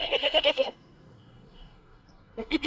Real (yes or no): no